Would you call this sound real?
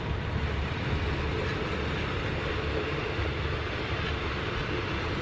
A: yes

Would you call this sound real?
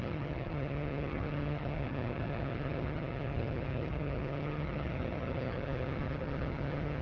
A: no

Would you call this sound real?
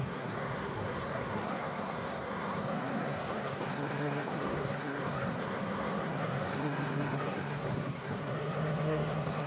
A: no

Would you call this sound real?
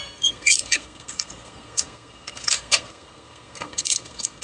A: no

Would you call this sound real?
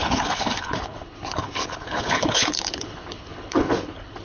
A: no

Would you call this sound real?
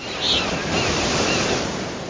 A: yes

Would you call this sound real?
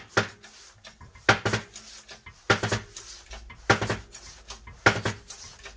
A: yes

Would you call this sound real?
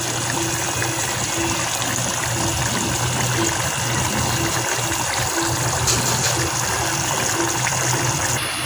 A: yes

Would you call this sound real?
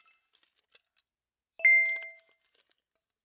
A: yes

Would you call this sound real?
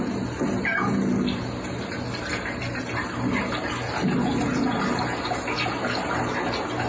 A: yes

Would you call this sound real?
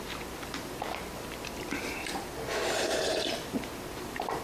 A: yes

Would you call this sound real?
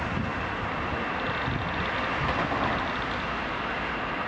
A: yes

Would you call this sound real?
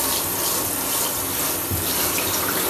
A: yes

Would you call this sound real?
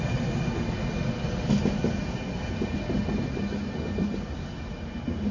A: yes